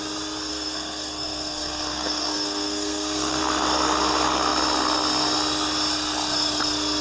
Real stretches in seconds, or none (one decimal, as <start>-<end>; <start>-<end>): 0.0-0.5; 3.4-7.0